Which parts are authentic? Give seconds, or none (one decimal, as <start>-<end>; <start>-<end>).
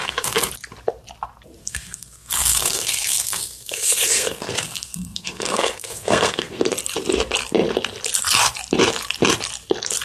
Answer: 0.5-1.6; 6.6-10.0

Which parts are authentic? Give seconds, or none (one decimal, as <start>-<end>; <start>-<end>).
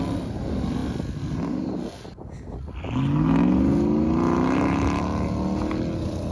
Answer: 0.0-6.3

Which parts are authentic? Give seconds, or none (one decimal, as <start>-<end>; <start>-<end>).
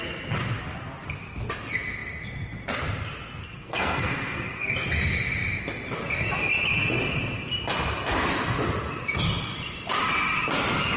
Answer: 0.0-3.4; 4.7-11.0